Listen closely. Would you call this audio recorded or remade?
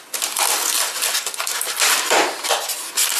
recorded